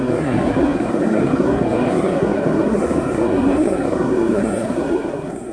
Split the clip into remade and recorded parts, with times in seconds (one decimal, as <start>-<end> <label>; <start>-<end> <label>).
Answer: 0.0-5.5 remade